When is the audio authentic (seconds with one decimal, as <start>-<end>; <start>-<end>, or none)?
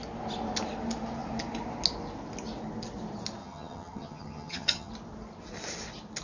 0.0-3.4; 4.9-6.2